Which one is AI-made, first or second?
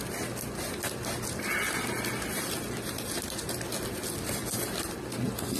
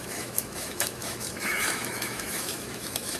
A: second